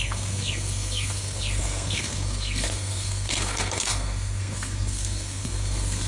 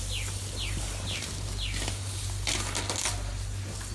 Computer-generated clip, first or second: first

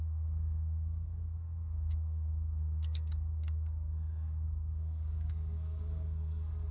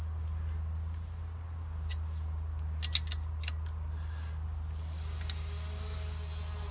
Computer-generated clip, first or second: first